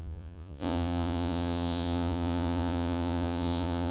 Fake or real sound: fake